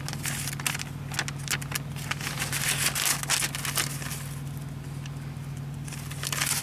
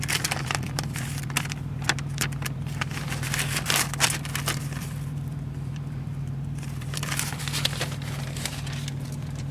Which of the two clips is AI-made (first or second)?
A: second